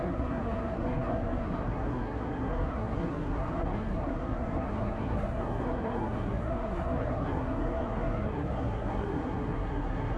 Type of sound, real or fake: fake